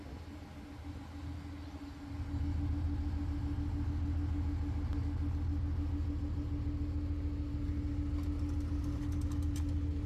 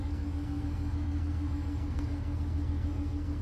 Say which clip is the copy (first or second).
second